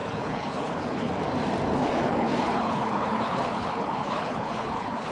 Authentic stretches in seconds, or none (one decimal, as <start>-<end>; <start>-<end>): 1.1-1.8